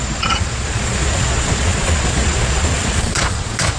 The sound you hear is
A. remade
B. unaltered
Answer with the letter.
A